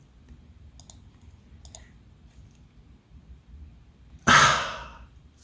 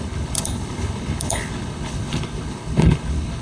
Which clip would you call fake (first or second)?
second